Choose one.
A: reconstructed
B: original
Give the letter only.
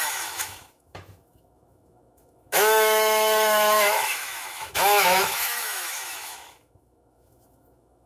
A